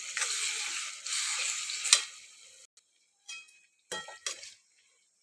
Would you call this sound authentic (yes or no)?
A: yes